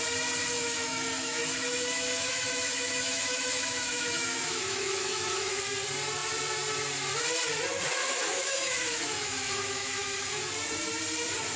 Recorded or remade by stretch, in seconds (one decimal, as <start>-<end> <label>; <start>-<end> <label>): 0.0-0.4 recorded; 0.4-5.6 remade; 5.6-8.0 recorded; 8.0-10.5 remade; 10.5-11.6 recorded